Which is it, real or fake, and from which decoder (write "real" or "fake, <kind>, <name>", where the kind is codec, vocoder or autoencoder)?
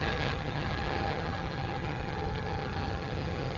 fake, vocoder, HiFi-GAN